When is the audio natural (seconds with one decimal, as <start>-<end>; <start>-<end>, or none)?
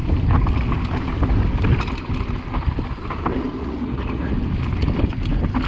0.0-3.6; 4.3-5.7